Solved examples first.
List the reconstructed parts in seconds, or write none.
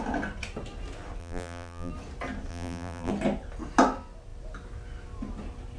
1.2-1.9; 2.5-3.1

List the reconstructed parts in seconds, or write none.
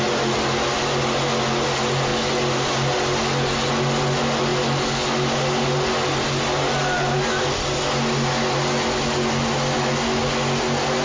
none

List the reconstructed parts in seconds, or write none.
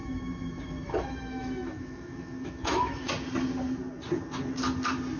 0.0-3.1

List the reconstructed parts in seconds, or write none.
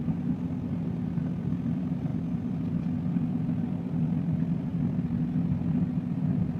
0.0-2.1; 3.6-4.7; 5.9-6.6